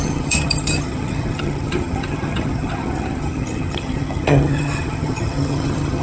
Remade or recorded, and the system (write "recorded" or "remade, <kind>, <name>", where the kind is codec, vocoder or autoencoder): remade, vocoder, HiFi-GAN